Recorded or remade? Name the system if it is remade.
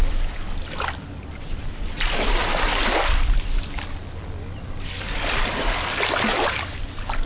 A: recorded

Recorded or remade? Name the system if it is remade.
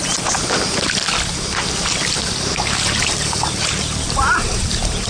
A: recorded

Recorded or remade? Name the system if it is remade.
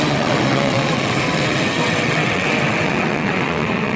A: remade, vocoder, WaveNeXt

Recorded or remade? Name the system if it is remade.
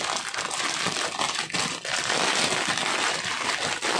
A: recorded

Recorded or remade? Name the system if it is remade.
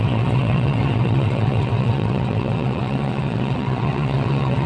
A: remade, vocoder, WaveNeXt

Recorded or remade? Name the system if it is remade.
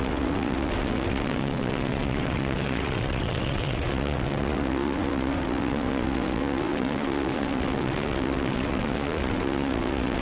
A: remade, vocoder, WaveNeXt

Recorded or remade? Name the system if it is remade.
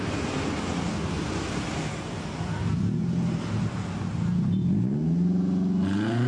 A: recorded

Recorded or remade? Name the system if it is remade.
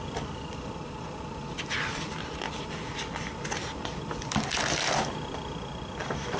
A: recorded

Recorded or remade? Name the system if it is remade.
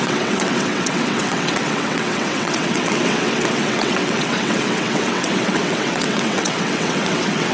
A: remade, vocoder, WaveNeXt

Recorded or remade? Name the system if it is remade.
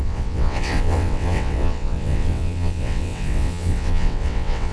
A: remade, vocoder, WaveNeXt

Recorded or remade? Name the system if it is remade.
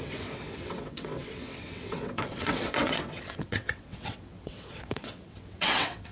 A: remade, vocoder, WaveNeXt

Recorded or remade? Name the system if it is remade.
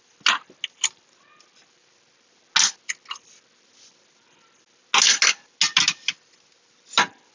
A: recorded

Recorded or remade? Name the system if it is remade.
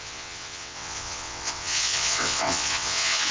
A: remade, vocoder, WaveNeXt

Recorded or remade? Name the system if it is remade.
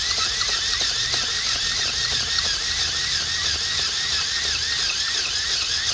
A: recorded